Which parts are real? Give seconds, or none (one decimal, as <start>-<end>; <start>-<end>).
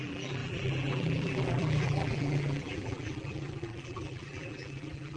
none